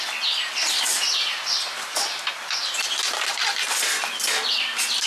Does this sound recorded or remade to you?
recorded